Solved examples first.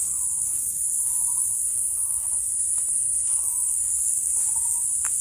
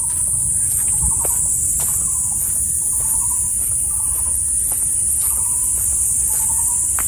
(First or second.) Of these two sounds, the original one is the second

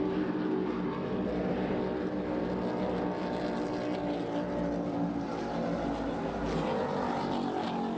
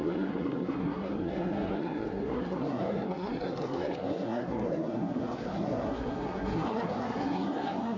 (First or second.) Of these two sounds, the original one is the first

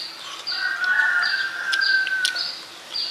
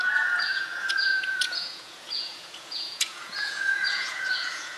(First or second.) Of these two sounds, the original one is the first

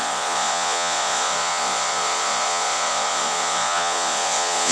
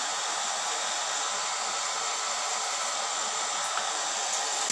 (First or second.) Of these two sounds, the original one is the second